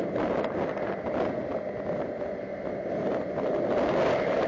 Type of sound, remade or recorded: recorded